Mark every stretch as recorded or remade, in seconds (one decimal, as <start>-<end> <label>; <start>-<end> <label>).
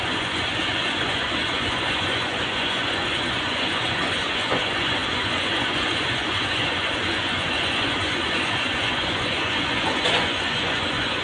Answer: 0.0-11.2 remade